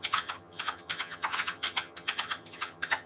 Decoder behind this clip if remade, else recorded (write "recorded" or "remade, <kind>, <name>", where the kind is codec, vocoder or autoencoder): remade, vocoder, HiFi-GAN